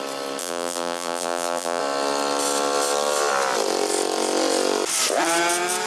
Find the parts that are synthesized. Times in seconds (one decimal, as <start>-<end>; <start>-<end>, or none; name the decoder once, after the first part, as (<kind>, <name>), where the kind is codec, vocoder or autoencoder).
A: 0.4-1.8 (vocoder, BigVGAN v2)